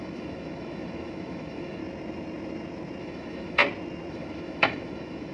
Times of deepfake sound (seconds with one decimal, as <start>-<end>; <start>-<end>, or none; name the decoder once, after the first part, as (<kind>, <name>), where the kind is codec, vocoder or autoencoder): 0.0-1.8 (autoencoder, DAC-VAE); 3.0-3.6; 4.1-5.3